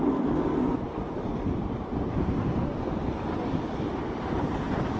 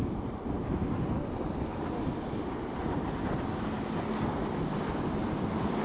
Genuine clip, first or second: second